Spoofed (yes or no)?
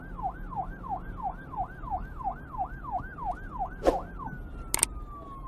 no